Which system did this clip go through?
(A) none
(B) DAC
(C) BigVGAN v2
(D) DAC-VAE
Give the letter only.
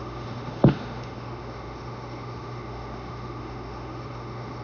D